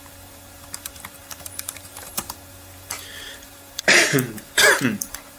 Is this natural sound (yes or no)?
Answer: no